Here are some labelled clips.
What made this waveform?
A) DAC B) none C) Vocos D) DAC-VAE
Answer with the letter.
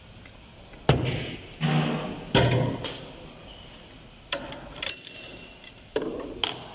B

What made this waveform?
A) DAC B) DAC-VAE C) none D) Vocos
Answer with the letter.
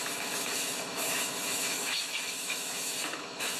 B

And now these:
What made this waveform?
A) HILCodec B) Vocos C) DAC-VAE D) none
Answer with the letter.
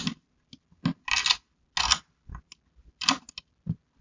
D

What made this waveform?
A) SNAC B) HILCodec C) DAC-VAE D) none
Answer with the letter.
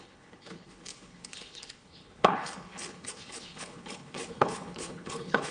B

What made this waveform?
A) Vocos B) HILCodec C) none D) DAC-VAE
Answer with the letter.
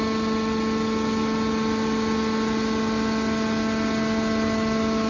C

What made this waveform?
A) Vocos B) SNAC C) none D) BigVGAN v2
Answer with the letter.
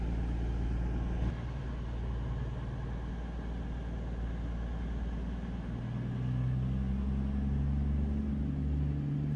C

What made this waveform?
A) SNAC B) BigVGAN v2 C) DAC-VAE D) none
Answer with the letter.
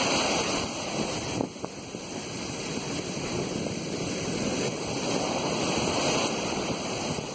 B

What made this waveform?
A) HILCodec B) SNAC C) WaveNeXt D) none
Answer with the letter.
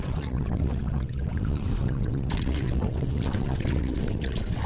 C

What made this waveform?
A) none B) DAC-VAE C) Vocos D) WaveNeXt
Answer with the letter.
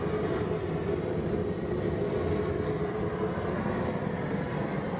A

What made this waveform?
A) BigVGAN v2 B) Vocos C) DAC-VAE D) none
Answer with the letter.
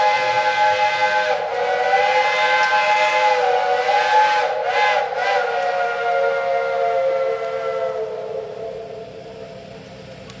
D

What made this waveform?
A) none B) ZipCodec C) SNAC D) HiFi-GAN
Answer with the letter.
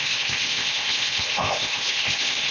B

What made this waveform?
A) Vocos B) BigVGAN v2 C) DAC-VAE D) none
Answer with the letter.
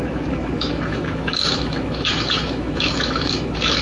C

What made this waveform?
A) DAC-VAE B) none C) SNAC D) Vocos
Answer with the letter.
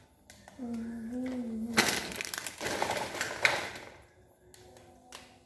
B